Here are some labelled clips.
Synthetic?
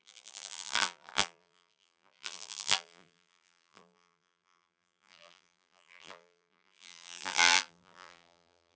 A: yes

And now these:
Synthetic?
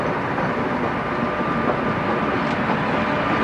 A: no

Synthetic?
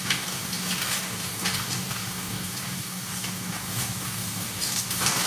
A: yes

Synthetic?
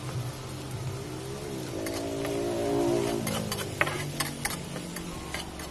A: no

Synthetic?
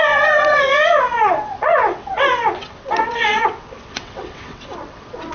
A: yes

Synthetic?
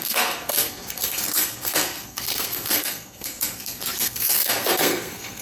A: yes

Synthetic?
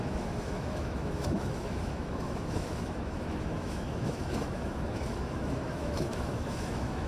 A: yes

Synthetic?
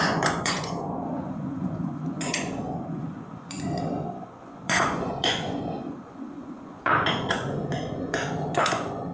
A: yes